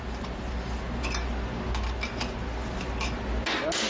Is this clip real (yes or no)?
yes